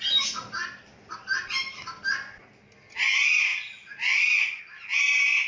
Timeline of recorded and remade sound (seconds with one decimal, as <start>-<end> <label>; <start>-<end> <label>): 0.0-5.5 recorded